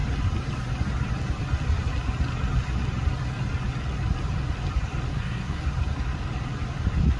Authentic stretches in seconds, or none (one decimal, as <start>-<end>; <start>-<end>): 0.0-5.1; 5.6-7.2